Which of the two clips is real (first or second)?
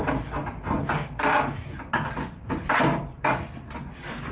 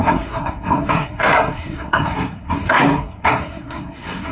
first